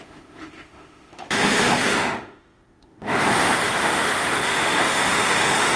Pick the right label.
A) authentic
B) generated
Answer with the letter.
B